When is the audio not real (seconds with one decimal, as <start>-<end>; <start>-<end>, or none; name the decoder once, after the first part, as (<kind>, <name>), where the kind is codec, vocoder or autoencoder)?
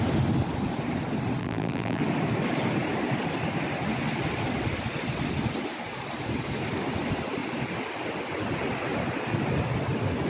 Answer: 1.4-2.0 (vocoder, BigVGAN v2)